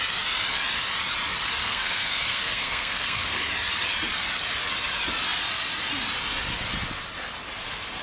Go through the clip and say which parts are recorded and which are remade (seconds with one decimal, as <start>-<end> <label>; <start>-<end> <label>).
0.0-1.6 recorded; 1.6-3.4 remade; 3.4-8.0 recorded